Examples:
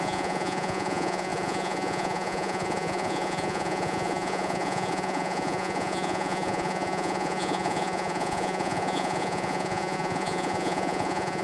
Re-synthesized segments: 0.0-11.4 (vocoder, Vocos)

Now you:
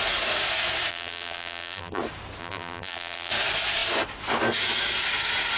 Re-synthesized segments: 0.9-2.0 (vocoder, BigVGAN v2); 2.4-3.3